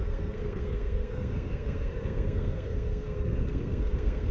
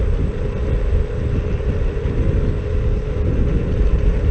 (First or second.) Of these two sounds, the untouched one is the second